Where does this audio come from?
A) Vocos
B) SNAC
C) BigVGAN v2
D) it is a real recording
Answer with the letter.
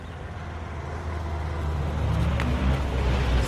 D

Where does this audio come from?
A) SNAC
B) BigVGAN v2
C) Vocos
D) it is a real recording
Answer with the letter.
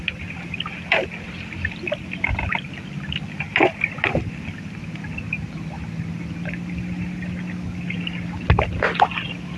D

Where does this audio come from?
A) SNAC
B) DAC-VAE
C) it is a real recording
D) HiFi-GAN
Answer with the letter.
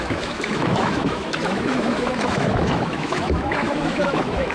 B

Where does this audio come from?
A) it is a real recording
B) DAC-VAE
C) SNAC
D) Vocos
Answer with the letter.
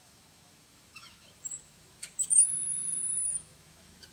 B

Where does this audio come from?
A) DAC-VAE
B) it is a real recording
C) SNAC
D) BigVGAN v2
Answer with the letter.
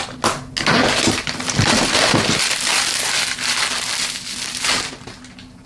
B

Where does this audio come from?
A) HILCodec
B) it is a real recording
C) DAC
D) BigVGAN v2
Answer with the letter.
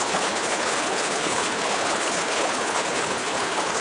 A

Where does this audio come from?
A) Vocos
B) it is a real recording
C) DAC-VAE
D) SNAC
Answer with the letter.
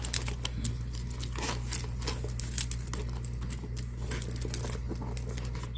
B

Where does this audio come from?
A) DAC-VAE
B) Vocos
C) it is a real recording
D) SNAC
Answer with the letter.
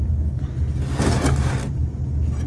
C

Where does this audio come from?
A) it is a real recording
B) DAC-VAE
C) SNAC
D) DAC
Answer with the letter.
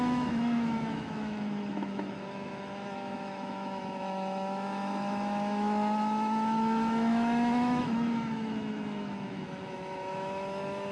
B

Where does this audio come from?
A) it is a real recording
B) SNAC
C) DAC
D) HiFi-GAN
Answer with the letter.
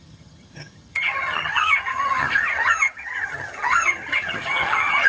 D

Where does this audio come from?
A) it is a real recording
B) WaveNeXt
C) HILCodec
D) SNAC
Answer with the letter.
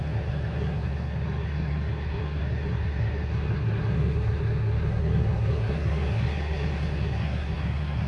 D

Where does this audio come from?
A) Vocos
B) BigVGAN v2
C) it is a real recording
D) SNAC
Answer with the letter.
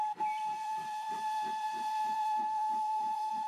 B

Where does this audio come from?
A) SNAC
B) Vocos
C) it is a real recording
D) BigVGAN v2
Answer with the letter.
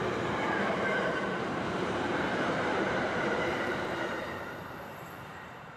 D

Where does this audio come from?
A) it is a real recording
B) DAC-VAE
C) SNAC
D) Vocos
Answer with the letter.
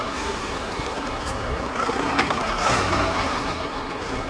C